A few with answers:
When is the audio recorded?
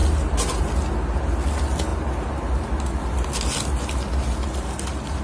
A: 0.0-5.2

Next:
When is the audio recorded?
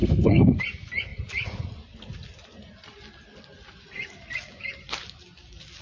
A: 0.6-5.8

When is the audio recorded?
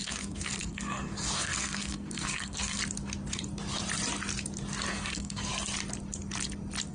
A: 2.8-4.9; 5.5-6.9